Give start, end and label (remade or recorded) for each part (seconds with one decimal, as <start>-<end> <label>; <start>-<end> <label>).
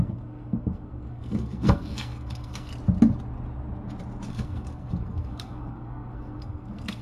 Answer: 0.0-2.7 remade; 2.7-4.3 recorded; 4.3-7.0 remade